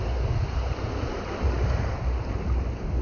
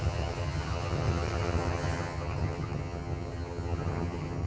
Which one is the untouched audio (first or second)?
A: first